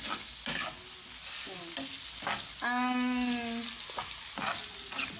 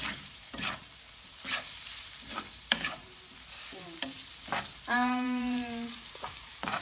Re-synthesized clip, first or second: second